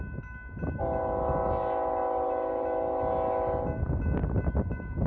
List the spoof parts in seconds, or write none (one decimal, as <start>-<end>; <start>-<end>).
none